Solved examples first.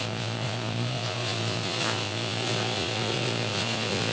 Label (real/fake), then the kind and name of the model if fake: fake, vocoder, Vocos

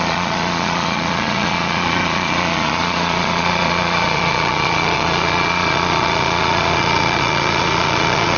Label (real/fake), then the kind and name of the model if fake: fake, vocoder, Vocos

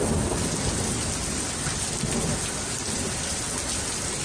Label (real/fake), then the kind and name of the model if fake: real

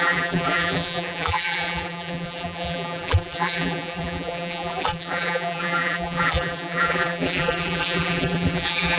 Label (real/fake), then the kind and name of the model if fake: fake, vocoder, BigVGAN v2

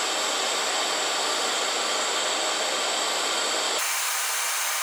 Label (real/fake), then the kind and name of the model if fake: real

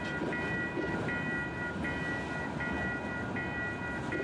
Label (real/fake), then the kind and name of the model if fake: real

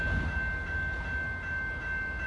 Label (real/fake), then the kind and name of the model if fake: real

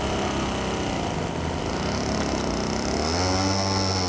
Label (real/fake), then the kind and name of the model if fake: real